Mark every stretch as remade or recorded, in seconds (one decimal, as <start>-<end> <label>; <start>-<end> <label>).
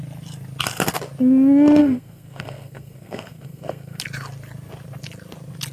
0.0-1.8 recorded; 1.8-4.0 remade; 4.0-5.7 recorded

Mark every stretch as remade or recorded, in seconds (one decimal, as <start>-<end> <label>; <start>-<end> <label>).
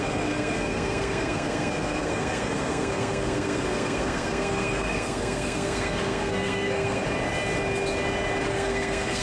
0.0-7.0 remade; 7.0-8.5 recorded; 8.5-9.2 remade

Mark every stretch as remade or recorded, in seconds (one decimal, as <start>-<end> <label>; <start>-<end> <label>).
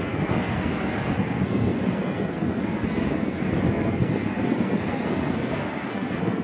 0.0-6.4 remade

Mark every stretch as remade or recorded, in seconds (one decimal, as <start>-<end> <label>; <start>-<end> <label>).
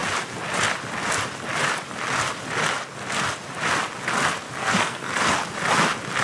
0.0-4.6 recorded; 4.6-5.1 remade; 5.1-6.2 recorded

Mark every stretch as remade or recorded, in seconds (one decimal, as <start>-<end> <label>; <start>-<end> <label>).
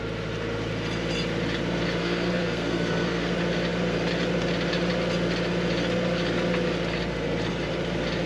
0.0-2.0 recorded; 2.0-3.3 remade; 3.3-8.3 recorded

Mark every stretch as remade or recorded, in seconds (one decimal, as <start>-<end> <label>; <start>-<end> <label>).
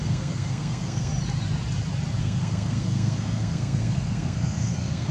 0.0-1.1 remade; 1.1-2.2 recorded; 2.2-5.1 remade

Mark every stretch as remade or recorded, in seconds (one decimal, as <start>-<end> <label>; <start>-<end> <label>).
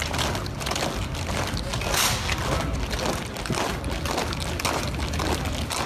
0.0-5.9 recorded